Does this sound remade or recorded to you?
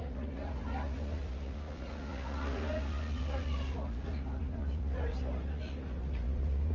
remade